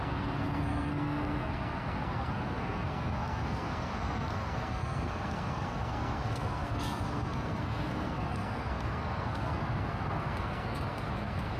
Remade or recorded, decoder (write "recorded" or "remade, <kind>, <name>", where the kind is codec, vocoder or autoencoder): remade, codec, SNAC